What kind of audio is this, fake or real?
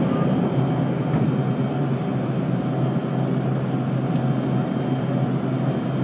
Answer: real